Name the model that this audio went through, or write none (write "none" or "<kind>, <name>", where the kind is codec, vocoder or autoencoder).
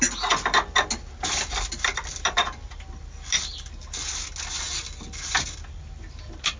none